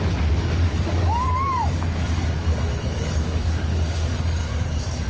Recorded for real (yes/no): no